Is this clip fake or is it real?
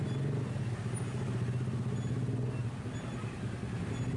real